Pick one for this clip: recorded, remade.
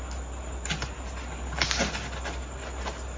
recorded